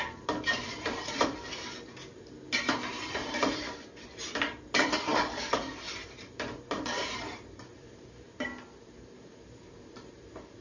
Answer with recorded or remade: remade